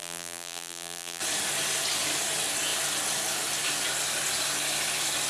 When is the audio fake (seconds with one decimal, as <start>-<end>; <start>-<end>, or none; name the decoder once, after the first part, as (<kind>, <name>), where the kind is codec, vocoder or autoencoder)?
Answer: 0.0-1.2 (vocoder, BigVGAN v2)